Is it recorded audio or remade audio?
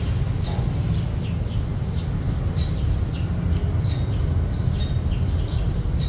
recorded